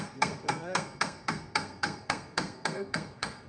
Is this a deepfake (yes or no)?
yes